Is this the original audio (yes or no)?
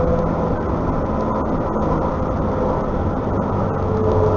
yes